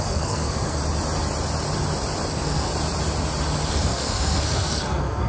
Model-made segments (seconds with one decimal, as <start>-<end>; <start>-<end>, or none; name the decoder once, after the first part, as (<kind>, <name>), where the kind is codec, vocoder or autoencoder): 0.0-0.8 (codec, SNAC); 2.3-2.7; 3.7-5.3